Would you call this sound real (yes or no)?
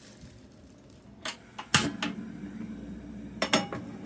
yes